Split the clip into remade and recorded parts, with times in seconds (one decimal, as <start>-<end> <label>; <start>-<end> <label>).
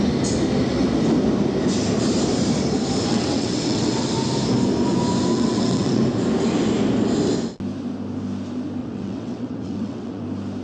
0.0-3.1 recorded; 3.1-4.1 remade; 4.1-5.3 recorded; 5.3-6.0 remade; 6.0-8.8 recorded; 8.8-10.2 remade; 10.2-10.6 recorded